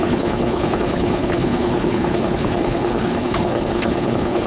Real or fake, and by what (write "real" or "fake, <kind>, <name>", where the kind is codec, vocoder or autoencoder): fake, codec, HILCodec